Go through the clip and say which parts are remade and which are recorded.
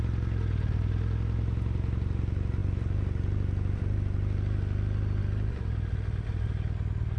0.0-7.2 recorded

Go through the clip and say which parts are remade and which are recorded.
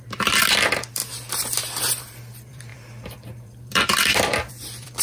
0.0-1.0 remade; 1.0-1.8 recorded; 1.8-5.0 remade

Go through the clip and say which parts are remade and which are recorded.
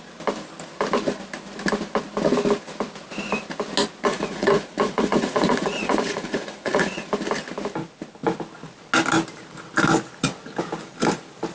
0.0-4.1 recorded; 4.1-7.1 remade; 7.1-11.5 recorded